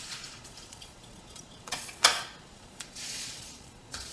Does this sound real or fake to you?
fake